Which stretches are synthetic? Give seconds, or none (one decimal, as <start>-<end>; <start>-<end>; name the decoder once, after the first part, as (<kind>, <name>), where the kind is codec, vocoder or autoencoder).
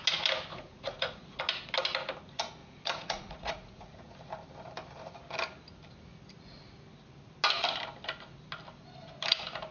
0.5-1.4 (vocoder, Vocos); 2.6-4.1